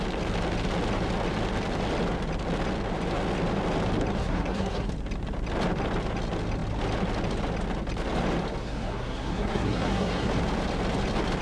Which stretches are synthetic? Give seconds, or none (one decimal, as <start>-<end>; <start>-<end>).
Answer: 4.2-4.9; 8.6-10.3